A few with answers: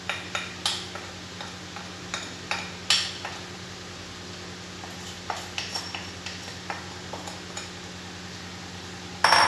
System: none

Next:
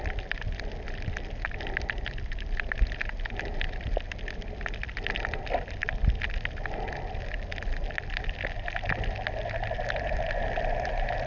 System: none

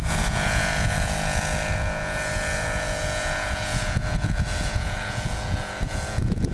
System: vocoder, Vocos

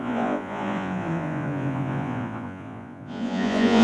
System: vocoder, Vocos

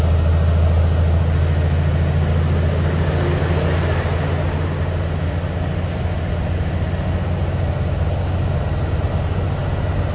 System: none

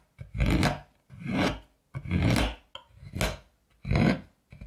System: none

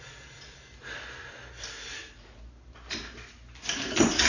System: none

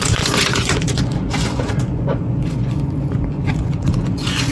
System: vocoder, Vocos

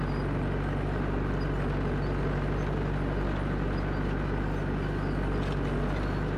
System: none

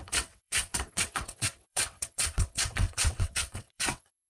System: vocoder, WaveNeXt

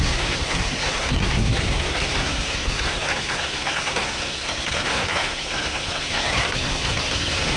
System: codec, SNAC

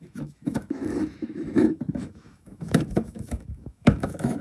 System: autoencoder, DAC-VAE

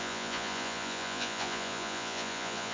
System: vocoder, Vocos